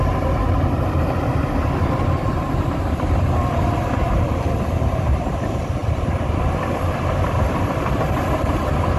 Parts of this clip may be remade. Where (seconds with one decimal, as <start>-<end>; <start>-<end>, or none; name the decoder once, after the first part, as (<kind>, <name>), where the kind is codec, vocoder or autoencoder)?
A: 0.0-9.0 (vocoder, BigVGAN v2)